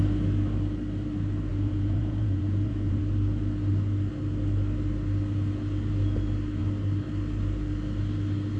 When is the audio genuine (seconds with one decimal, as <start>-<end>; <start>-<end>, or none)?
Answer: 0.0-1.5; 3.0-8.6